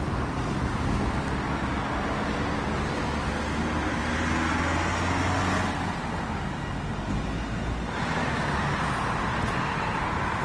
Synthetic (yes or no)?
no